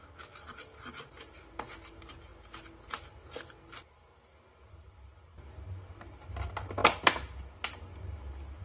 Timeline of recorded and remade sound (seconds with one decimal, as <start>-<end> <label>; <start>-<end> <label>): 0.0-8.6 recorded